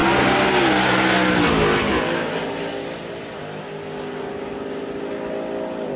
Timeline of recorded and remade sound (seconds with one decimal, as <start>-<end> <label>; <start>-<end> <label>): 0.0-6.0 recorded